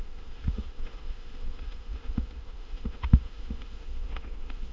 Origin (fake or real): fake